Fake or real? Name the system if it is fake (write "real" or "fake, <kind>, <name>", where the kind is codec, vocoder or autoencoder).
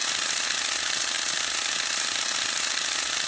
real